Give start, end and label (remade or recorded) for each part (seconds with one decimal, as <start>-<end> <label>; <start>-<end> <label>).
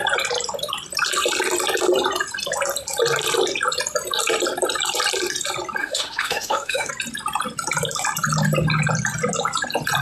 0.0-5.8 recorded; 5.8-6.9 remade; 6.9-10.0 recorded